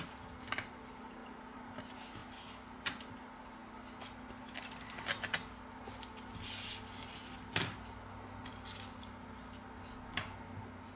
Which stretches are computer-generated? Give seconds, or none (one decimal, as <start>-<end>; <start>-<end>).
1.2-1.8